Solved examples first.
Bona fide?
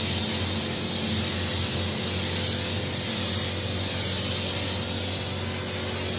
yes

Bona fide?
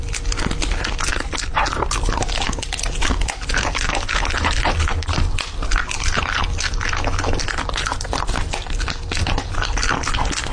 yes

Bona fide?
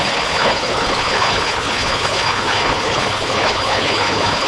no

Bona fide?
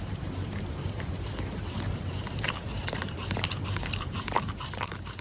no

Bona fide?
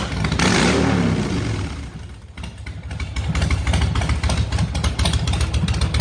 yes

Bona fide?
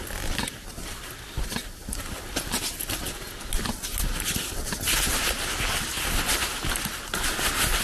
yes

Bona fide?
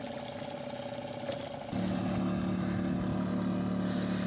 yes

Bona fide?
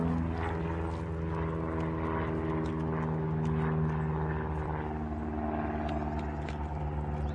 yes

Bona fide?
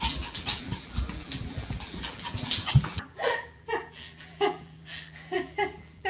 no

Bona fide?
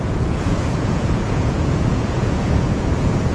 no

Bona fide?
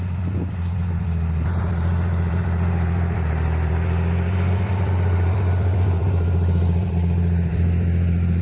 no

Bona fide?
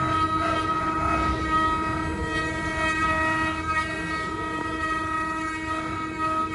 yes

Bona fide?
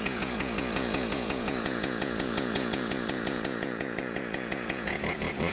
no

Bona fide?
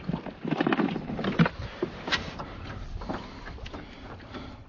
yes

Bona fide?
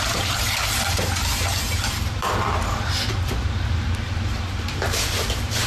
no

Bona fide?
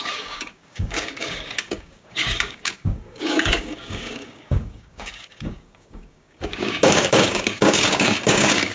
no